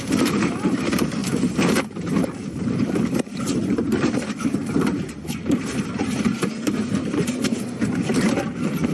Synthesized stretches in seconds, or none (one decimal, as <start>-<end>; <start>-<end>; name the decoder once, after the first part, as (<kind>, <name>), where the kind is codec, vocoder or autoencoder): 0.0-8.9 (vocoder, BigVGAN v2)